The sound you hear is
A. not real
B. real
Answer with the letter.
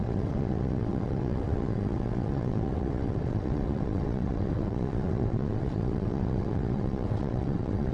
A